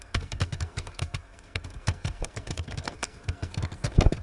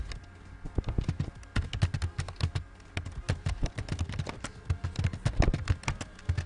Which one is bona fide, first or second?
second